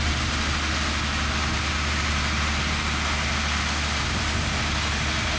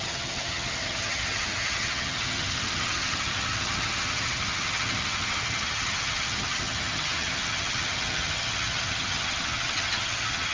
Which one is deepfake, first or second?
second